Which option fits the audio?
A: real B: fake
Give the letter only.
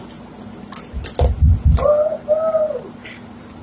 A